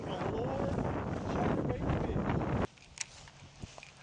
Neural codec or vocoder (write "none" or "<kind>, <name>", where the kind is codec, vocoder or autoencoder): none